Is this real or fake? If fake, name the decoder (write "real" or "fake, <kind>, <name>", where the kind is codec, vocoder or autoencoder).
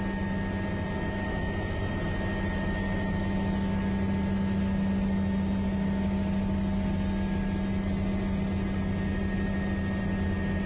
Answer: real